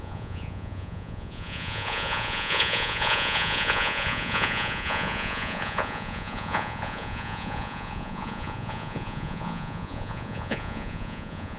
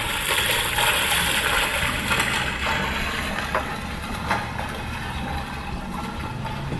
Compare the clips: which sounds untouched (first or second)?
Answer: second